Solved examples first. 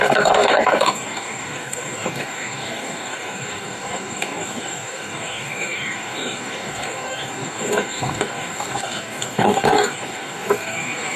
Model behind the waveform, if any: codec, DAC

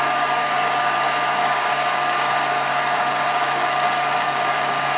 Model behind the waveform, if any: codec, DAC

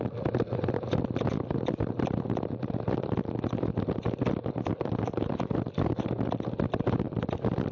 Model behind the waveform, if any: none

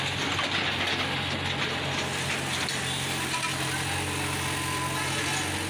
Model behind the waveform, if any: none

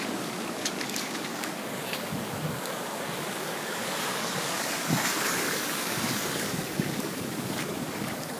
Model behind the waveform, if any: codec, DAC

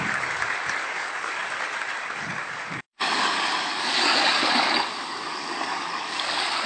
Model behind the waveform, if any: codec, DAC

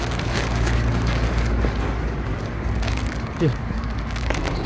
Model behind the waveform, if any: codec, DAC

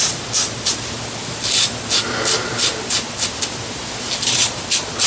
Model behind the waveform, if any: none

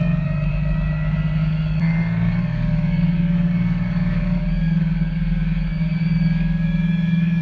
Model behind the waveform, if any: codec, DAC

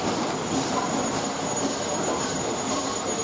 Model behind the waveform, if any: none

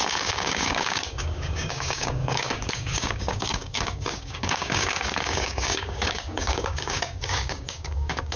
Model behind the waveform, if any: codec, DAC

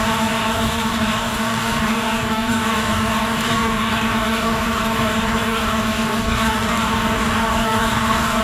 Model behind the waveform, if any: codec, DAC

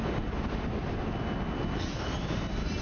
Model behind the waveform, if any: none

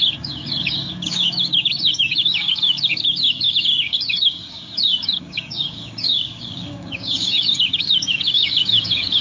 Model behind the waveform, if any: codec, DAC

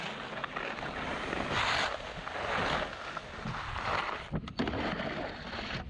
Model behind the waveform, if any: none